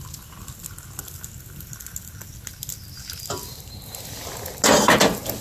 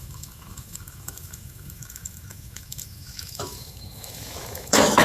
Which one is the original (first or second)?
first